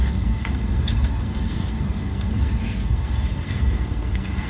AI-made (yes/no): yes